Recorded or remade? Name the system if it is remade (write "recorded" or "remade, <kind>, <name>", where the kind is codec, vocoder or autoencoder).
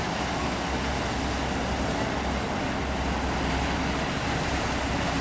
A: recorded